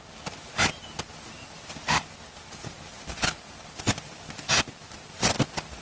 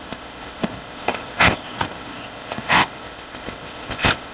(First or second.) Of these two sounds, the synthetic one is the second